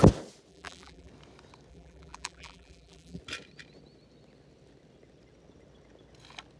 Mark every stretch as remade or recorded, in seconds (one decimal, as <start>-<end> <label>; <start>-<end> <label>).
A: 0.0-0.5 recorded; 0.5-1.1 remade; 1.1-1.7 recorded; 1.7-3.2 remade; 3.2-6.6 recorded